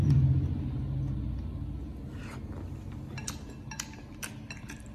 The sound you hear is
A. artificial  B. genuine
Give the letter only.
B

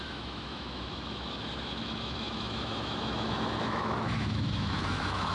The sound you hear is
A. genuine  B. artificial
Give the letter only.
B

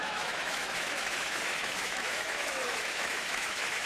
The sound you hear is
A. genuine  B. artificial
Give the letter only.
B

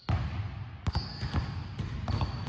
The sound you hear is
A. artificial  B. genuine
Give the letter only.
B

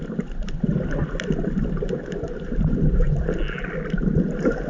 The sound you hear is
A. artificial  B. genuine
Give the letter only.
B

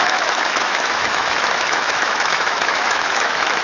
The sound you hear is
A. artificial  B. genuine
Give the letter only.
A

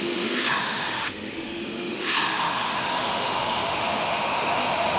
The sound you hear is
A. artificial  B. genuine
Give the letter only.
A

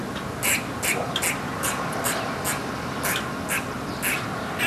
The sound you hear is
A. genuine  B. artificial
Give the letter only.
A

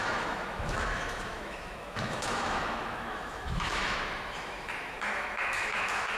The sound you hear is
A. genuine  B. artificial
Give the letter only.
B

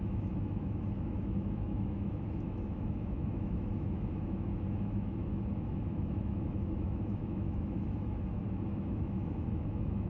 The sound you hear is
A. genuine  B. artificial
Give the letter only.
B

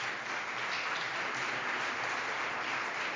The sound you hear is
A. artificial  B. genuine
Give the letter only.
B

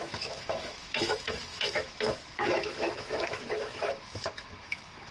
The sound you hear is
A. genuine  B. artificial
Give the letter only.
B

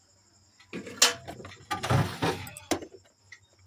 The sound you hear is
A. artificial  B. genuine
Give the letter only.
B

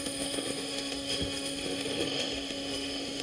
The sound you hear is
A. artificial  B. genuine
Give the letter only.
A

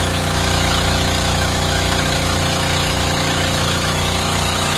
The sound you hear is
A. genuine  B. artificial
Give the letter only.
B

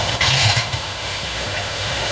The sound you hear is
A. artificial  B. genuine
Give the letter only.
A